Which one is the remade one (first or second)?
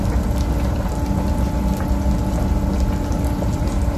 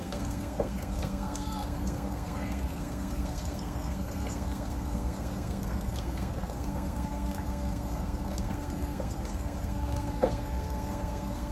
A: second